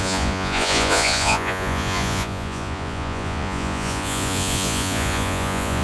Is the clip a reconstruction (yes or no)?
yes